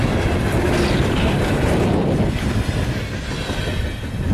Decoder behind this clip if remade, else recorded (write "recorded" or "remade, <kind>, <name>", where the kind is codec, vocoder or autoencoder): recorded